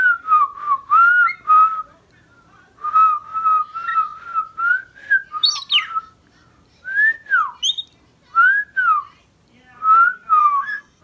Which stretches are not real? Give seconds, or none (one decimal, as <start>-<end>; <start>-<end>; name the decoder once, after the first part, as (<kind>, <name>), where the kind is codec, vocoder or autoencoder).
10.4-11.0 (codec, SNAC)